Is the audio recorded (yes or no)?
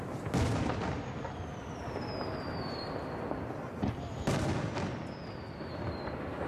yes